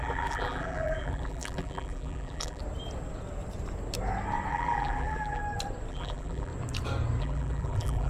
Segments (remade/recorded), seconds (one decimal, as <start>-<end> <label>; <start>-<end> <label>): 0.0-2.6 remade; 2.6-4.5 recorded; 4.5-5.4 remade; 5.4-5.9 recorded; 5.9-6.5 remade; 6.5-7.2 recorded; 7.2-8.1 remade